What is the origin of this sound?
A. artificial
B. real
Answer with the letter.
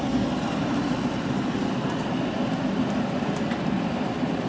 A